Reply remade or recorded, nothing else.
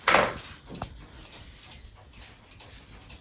recorded